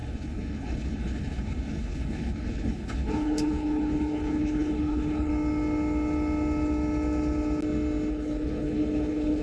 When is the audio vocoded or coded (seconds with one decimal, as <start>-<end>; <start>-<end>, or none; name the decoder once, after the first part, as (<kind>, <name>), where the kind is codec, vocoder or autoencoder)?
0.0-5.3 (codec, HILCodec); 8.1-9.4